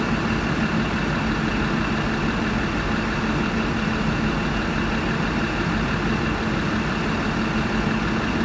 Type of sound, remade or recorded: recorded